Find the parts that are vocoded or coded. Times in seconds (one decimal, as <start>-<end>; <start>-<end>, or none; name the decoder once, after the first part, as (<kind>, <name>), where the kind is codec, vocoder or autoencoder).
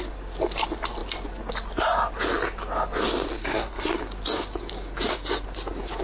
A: 3.4-4.0 (codec, SNAC)